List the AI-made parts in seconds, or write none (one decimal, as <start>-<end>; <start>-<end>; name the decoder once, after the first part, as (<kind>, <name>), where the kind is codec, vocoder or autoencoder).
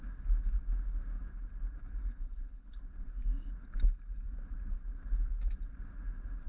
2.0-2.8 (codec, HILCodec)